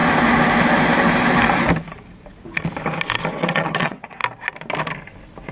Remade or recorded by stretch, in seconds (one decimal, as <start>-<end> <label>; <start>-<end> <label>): 0.0-3.3 recorded; 3.3-4.2 remade; 4.2-5.5 recorded